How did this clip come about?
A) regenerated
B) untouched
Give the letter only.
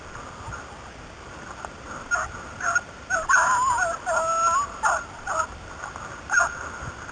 B